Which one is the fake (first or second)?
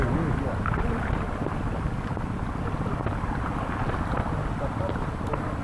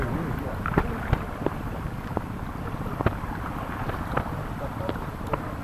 second